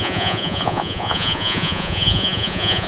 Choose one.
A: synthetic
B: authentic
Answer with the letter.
A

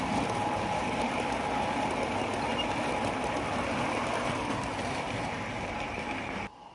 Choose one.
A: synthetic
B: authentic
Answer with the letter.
B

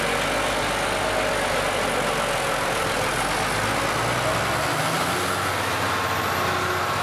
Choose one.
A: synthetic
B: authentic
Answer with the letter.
B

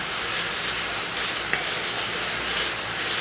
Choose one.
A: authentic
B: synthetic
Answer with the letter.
A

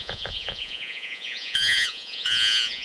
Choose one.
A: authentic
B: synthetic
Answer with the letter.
B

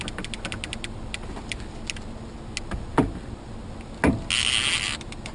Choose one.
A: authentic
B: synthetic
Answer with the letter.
A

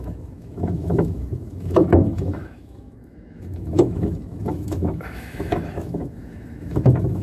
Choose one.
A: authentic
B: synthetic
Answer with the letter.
B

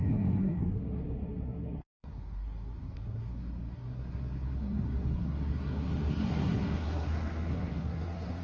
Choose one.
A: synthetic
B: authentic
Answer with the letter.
A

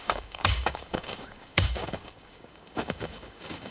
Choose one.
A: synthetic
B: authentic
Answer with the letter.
A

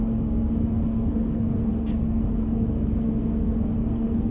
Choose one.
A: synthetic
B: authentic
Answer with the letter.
A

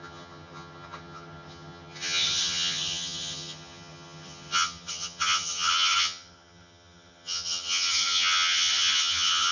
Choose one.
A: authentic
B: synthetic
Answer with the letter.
B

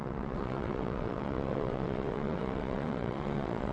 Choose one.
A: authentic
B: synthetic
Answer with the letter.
B